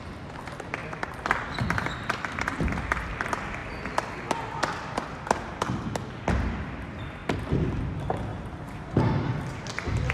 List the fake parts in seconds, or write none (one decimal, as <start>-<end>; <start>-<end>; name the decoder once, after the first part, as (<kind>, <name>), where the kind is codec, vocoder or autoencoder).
8.3-9.1 (vocoder, BigVGAN v2)